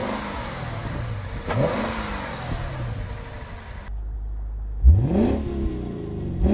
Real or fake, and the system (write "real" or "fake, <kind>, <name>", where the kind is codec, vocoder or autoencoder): real